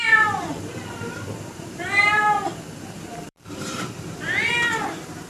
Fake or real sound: fake